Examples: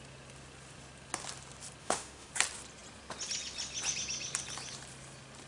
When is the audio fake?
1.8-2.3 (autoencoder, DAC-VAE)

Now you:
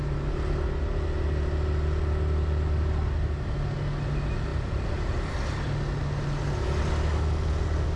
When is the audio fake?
4.5-5.6 (vocoder, BigVGAN v2)

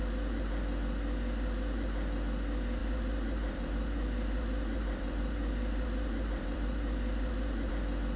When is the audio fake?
2.8-7.7 (vocoder, BigVGAN v2)

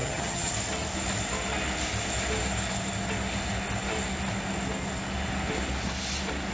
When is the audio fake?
0.0-0.5 (vocoder, HiFi-GAN)

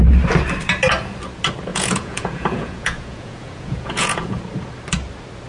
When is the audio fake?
1.7-4.4 (vocoder, Vocos)

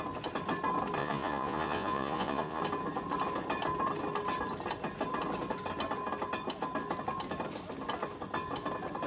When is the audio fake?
1.0-2.6 (vocoder, Vocos)

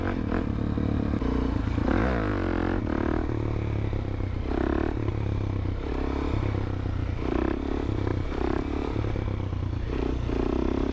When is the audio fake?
5.1-5.9 (vocoder, BigVGAN v2); 8.1-9.0